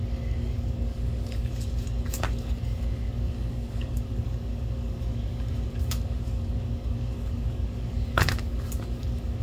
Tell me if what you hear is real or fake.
fake